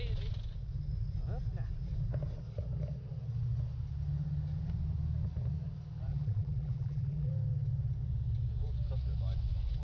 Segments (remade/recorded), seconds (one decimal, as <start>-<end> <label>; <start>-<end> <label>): 0.0-6.1 recorded; 6.1-7.3 remade; 7.3-9.8 recorded